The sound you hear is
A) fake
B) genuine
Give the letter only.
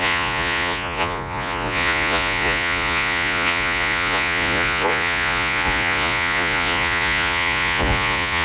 A